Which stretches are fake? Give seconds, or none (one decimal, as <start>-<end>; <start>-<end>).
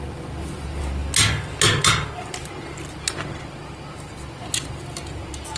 none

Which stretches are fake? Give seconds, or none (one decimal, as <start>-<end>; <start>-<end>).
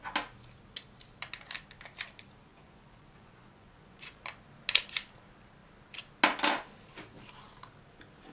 2.5-4.2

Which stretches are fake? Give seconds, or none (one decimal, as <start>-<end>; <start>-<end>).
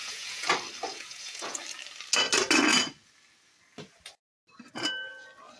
0.0-0.5; 0.9-1.6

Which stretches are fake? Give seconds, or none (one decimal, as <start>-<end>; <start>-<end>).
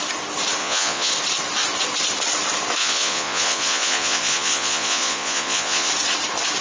0.6-1.1; 2.8-5.9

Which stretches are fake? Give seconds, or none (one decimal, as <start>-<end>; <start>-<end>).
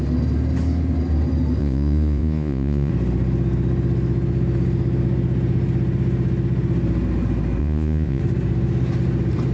1.6-2.9; 7.6-8.2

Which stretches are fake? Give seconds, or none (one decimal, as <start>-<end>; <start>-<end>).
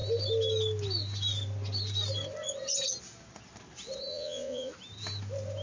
4.1-4.7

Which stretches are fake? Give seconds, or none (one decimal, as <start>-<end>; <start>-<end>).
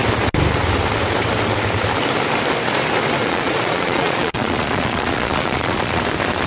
3.2-6.0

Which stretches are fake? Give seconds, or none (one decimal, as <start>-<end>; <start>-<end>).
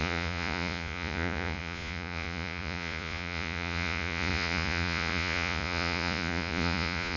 0.0-7.2